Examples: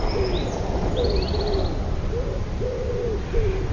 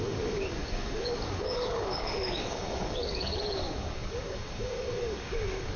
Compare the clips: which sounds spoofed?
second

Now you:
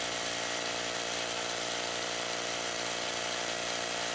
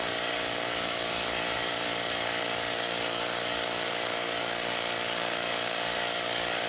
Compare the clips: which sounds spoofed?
second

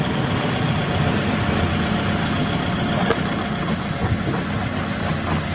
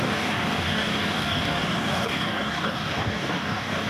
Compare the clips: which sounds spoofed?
second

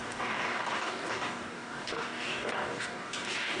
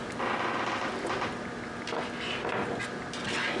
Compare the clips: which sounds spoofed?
first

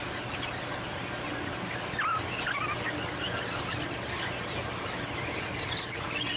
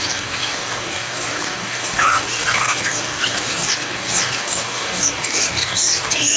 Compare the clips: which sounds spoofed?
second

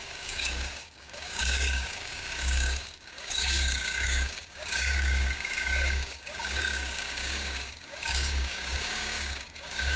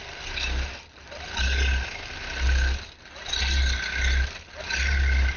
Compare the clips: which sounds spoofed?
first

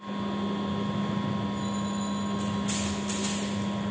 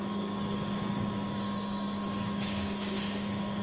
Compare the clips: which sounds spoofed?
second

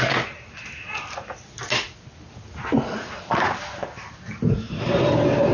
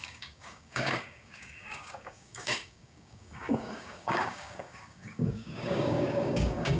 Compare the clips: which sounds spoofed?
second